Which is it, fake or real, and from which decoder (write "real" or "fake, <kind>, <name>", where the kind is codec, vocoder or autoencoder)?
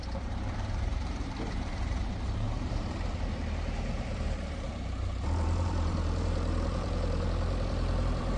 fake, vocoder, BigVGAN v2